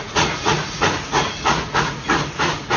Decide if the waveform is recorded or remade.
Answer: remade